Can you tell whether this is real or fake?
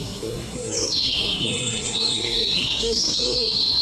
fake